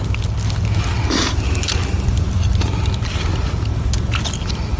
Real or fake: real